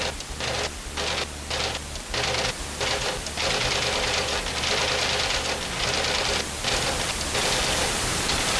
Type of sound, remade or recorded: recorded